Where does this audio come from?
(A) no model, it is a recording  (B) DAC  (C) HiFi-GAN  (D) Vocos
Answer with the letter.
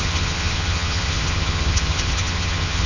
C